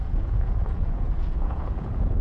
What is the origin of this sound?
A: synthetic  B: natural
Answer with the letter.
A